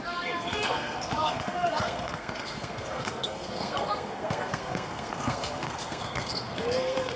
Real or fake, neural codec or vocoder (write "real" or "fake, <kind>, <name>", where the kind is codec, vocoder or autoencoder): fake, codec, SNAC